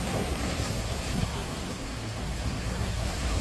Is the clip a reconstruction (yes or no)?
yes